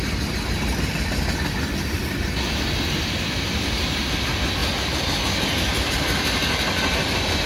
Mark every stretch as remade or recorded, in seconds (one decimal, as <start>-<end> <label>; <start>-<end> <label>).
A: 0.0-7.5 recorded